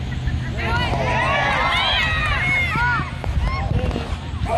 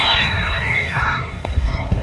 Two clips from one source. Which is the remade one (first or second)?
second